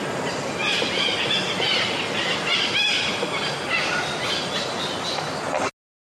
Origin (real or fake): real